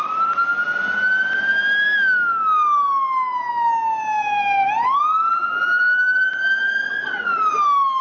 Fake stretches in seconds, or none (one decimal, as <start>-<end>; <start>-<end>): none